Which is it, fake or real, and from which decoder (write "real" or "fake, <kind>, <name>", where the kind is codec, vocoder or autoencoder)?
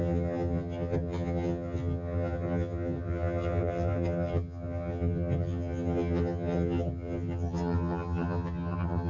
fake, vocoder, HiFi-GAN